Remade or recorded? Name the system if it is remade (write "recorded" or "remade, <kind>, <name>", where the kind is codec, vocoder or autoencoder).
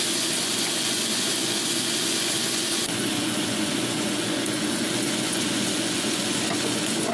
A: remade, vocoder, Vocos